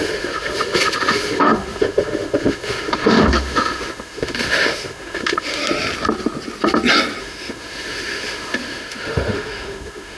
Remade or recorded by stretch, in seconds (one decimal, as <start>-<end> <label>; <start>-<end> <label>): 0.0-5.6 remade; 5.6-7.2 recorded; 7.2-10.2 remade